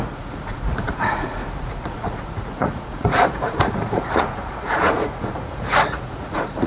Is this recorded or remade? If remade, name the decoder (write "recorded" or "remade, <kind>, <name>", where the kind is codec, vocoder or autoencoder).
remade, vocoder, Vocos